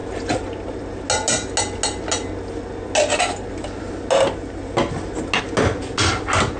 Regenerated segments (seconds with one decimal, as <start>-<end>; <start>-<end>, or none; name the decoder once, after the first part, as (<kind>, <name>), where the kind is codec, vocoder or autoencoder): none